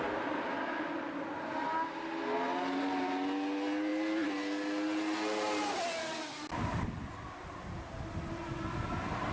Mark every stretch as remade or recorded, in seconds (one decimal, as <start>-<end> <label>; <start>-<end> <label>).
0.0-9.3 recorded